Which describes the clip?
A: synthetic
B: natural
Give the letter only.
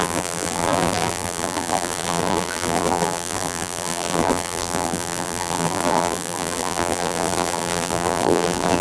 A